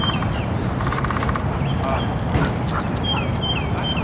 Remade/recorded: recorded